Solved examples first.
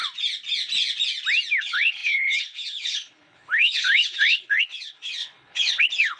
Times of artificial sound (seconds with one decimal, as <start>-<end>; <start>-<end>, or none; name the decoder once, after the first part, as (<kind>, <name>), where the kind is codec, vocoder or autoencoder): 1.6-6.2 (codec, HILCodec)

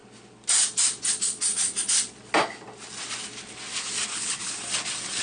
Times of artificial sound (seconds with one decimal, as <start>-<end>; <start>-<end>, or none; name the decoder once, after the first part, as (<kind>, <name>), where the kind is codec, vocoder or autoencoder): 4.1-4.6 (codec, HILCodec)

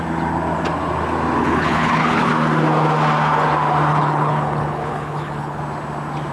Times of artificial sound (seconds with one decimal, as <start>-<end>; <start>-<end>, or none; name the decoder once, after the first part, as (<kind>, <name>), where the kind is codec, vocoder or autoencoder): 1.4-2.3 (codec, HILCodec); 3.9-5.6

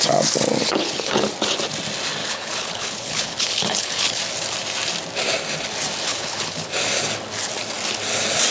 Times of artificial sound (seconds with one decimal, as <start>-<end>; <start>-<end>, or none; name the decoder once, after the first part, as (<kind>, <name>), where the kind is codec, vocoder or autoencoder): 0.6-1.3 (codec, HILCodec); 2.2-4.2; 6.1-6.7

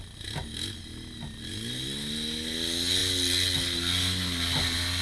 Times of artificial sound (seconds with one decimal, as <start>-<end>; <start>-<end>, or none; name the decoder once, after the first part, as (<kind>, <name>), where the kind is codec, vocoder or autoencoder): none

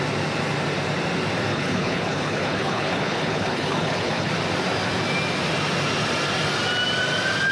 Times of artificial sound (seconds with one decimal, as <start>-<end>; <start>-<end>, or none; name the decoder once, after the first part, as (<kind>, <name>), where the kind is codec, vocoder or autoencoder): 1.5-4.3 (codec, HILCodec)

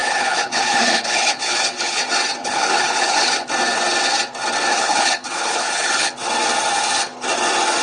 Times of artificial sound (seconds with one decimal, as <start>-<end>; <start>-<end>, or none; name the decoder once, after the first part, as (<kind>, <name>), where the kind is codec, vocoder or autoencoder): 0.0-2.0 (codec, HILCodec); 2.4-3.5; 4.7-6.1

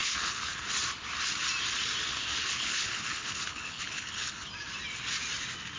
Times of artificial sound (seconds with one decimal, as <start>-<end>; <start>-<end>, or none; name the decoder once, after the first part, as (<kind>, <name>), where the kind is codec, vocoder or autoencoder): 0.0-0.7 (codec, HILCodec); 2.1-4.5